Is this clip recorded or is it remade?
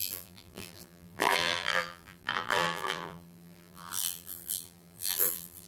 remade